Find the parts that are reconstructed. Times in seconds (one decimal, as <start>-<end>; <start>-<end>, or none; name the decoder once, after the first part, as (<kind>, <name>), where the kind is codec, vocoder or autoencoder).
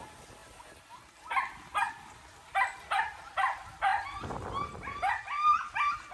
none